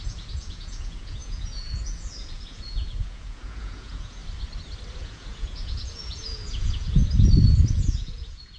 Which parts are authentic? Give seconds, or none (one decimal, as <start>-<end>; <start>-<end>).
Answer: 4.2-5.0; 7.0-7.7